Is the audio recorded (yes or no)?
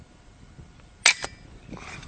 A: yes